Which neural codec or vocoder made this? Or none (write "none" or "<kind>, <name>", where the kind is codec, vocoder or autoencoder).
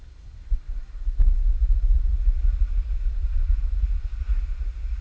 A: none